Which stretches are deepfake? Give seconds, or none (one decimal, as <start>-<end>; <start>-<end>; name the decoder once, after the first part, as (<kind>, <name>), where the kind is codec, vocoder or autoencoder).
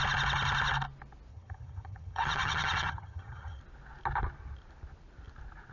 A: 1.3-3.6 (vocoder, HiFi-GAN)